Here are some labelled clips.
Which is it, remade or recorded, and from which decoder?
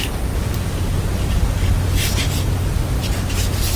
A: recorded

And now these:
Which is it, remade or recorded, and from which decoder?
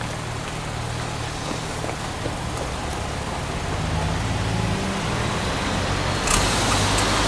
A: recorded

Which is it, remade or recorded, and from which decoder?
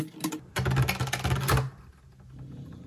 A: recorded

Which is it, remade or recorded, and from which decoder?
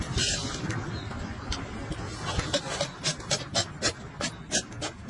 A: recorded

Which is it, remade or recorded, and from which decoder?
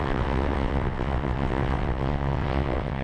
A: remade, vocoder, WaveNeXt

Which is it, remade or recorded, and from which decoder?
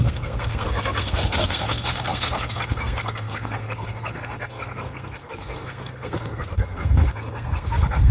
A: remade, codec, SNAC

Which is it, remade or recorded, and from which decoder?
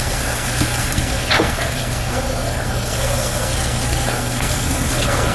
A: remade, codec, SNAC